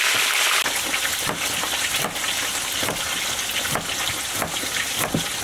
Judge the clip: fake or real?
real